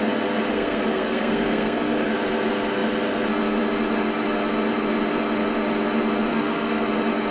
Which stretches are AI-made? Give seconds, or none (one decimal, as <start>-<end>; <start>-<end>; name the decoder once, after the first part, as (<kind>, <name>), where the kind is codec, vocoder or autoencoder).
0.5-2.1 (codec, SNAC); 6.3-6.8